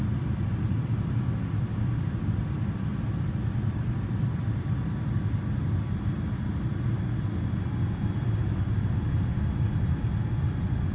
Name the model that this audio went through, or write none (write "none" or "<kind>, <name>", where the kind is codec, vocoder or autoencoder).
none